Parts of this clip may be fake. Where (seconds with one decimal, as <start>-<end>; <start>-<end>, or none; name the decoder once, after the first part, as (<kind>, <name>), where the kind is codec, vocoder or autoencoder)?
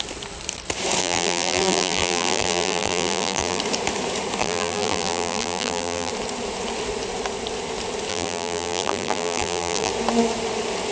1.0-3.6 (vocoder, BigVGAN v2); 4.4-6.1; 8.1-9.9